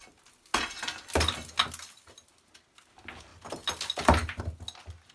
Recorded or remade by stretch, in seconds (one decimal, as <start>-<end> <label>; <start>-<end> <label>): 0.0-5.1 recorded